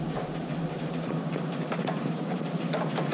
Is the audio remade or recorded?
remade